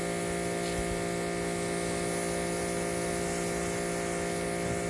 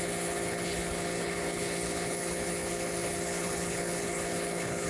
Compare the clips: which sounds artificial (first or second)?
second